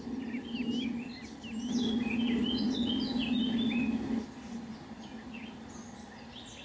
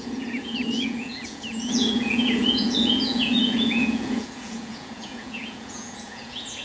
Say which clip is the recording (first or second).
first